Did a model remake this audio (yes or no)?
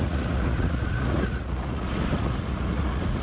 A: yes